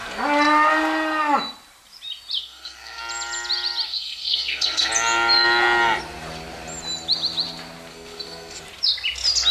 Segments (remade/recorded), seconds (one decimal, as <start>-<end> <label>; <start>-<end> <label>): 0.0-2.4 recorded; 2.4-3.0 remade; 3.0-3.9 recorded; 3.9-4.9 remade; 4.9-7.9 recorded; 7.9-8.6 remade; 8.6-9.5 recorded